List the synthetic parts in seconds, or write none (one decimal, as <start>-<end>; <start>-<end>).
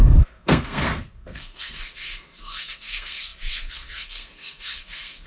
0.0-5.3